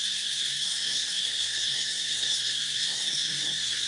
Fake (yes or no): yes